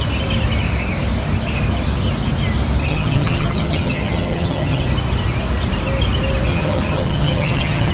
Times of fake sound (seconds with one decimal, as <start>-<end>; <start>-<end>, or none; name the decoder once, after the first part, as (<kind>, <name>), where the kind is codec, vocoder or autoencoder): 2.9-4.8 (vocoder, HiFi-GAN); 6.5-7.9